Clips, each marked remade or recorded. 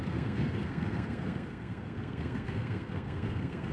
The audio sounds remade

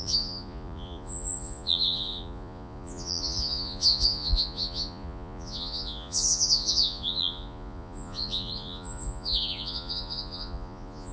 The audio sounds remade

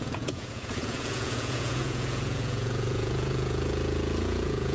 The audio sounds remade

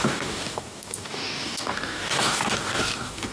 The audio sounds remade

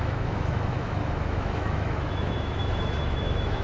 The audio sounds remade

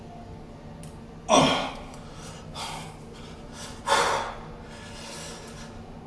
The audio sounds recorded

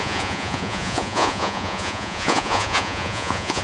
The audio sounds remade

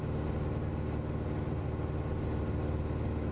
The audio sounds recorded